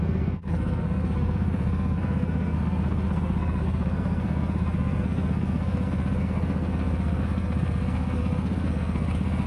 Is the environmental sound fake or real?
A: fake